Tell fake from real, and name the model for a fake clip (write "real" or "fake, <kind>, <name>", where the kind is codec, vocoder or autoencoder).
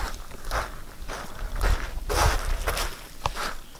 real